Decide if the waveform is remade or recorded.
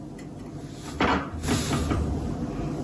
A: recorded